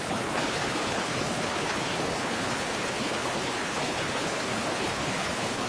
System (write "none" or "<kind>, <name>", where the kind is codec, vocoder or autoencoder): codec, HILCodec